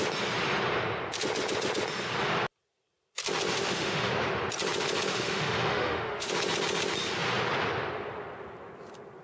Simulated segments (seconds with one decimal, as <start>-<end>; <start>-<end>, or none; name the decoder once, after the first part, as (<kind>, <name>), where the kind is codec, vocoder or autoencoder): 3.5-4.1 (autoencoder, DAC-VAE); 5.1-6.3